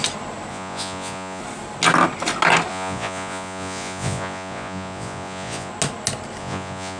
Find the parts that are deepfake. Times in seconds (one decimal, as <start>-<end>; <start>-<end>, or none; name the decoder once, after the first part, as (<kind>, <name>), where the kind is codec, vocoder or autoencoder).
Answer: 0.5-1.4 (vocoder, Vocos); 2.7-5.7; 6.4-7.0